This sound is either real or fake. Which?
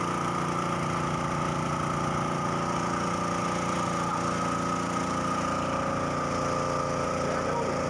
real